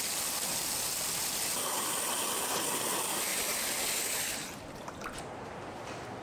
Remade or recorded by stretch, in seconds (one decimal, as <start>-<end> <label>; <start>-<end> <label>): 0.0-6.2 recorded